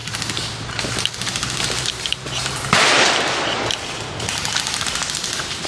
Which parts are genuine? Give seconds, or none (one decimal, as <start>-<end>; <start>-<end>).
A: 0.0-5.7